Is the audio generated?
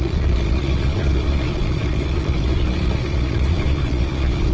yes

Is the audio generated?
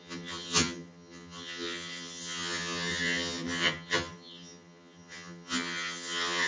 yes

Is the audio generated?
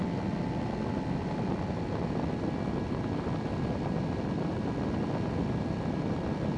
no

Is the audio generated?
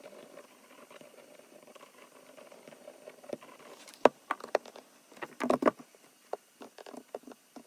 yes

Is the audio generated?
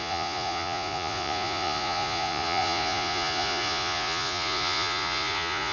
yes